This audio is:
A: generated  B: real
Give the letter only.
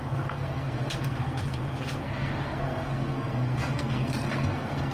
A